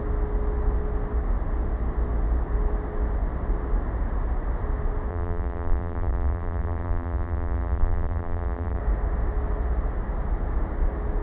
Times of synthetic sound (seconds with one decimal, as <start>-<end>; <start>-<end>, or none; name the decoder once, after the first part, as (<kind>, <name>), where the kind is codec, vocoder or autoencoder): 5.1-8.8 (vocoder, BigVGAN v2)